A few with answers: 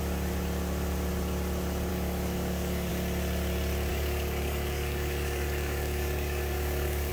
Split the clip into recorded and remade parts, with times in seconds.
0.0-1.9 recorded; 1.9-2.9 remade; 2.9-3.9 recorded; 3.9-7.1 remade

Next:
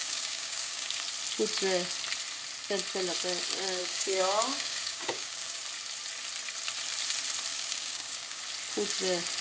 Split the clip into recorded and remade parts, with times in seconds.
0.0-1.0 remade; 1.0-3.8 recorded; 3.8-5.6 remade; 5.6-7.5 recorded; 7.5-8.4 remade; 8.4-9.4 recorded

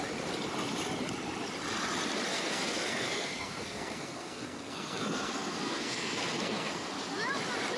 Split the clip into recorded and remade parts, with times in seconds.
0.0-2.3 recorded; 2.3-6.9 remade; 6.9-7.8 recorded

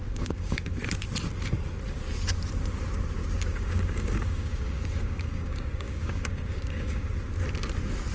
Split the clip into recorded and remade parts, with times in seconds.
0.0-0.8 remade; 0.8-3.5 recorded; 3.5-7.1 remade; 7.1-8.1 recorded

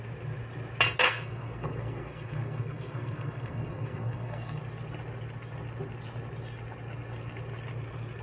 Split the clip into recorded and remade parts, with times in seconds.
0.0-1.0 recorded; 1.0-4.6 remade; 4.6-8.2 recorded

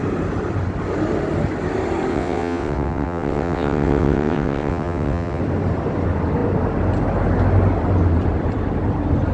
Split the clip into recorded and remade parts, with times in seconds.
0.0-2.1 recorded; 2.1-5.4 remade; 5.4-9.3 recorded